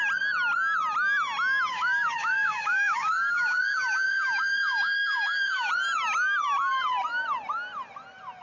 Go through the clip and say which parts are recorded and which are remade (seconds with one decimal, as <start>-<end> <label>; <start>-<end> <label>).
0.0-1.7 recorded; 1.7-5.7 remade; 5.7-8.4 recorded